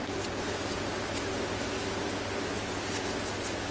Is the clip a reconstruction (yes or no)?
no